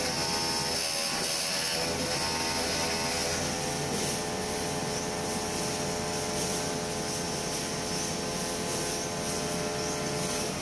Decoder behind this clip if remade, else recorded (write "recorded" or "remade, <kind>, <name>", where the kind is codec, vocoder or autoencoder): recorded